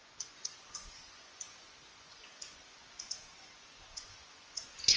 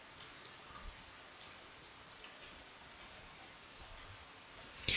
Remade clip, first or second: first